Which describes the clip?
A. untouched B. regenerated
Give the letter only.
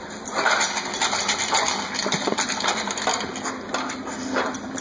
A